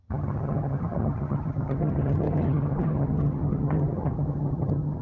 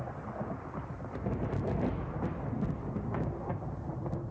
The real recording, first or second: second